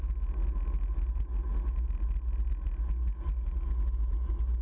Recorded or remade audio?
recorded